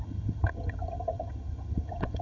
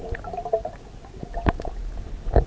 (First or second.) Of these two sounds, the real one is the second